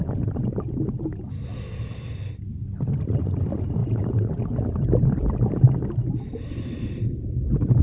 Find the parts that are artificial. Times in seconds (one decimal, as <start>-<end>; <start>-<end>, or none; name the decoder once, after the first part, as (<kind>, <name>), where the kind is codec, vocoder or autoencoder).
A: none

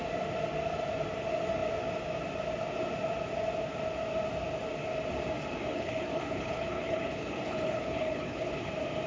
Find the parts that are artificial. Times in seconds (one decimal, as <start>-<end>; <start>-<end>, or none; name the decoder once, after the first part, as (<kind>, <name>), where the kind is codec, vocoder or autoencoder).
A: 5.7-8.7 (codec, HILCodec)

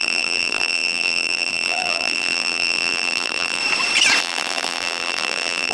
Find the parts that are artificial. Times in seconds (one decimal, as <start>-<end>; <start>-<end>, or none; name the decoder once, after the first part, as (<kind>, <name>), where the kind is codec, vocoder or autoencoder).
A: 0.0-3.6 (vocoder, BigVGAN v2); 4.2-5.7

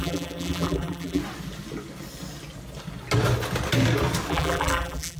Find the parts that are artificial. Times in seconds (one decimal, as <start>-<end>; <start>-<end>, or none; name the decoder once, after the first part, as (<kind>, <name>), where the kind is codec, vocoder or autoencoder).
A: 0.0-1.2 (vocoder, BigVGAN v2); 4.3-5.2